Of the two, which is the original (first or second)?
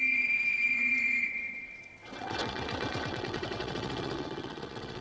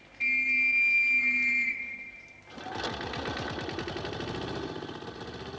second